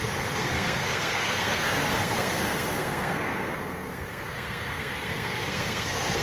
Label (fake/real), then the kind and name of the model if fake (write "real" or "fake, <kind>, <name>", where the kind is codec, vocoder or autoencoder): fake, codec, SNAC